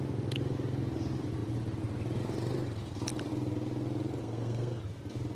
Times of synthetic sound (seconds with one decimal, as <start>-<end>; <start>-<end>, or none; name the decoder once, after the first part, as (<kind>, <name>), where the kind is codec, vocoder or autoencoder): 4.2-4.8 (codec, SNAC)